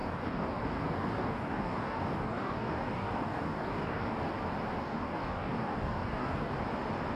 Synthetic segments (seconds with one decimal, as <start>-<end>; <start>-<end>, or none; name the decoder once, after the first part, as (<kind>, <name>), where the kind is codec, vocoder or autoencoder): 0.0-4.3 (codec, DAC); 4.8-6.5